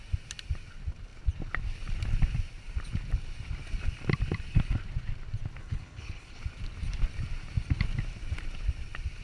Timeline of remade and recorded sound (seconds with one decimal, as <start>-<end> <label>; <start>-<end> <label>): 0.0-5.6 recorded; 5.6-6.4 remade; 6.4-9.2 recorded